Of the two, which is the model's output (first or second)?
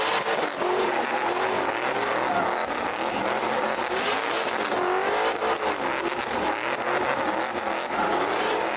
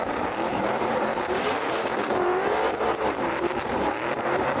second